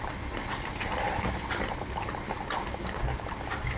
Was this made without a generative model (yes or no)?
yes